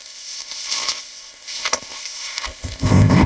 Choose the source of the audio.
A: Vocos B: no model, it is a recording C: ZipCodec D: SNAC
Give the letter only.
C